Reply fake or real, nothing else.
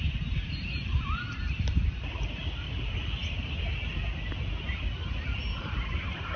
real